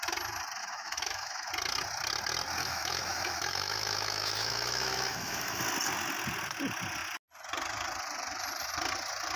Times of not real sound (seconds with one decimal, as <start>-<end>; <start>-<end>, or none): 0.6-1.5; 2.6-5.6